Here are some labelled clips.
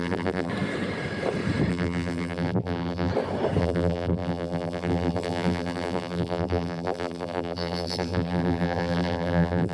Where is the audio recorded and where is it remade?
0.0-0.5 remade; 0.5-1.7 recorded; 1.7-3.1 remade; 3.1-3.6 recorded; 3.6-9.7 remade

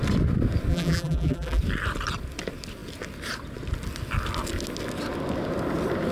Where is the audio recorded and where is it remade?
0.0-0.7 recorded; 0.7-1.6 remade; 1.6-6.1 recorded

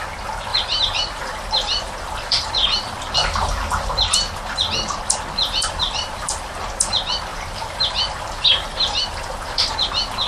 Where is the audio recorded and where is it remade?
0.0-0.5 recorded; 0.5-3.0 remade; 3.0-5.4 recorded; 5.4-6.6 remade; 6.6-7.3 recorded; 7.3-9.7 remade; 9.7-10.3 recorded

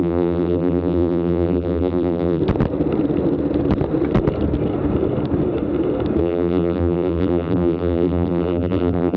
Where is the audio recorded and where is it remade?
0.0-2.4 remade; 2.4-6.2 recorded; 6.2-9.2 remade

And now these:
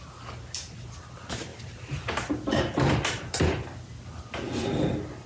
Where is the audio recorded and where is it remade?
0.0-1.5 recorded; 1.5-3.4 remade; 3.4-5.3 recorded

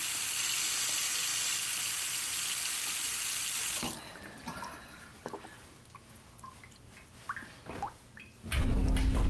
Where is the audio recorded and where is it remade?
0.0-9.3 recorded